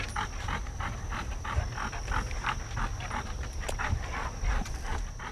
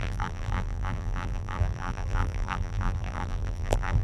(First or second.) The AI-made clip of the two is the second